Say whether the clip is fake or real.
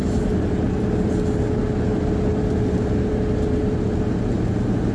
real